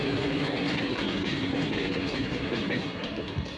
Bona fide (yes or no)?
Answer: no